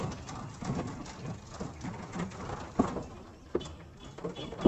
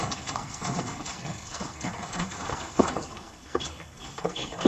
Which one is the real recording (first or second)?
first